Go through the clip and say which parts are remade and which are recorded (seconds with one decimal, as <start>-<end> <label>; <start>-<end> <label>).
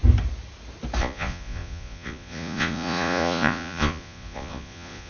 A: 0.0-1.0 recorded; 1.0-5.1 remade